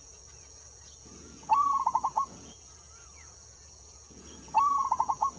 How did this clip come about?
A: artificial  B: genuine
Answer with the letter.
A